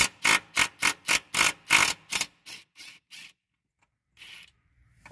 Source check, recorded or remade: recorded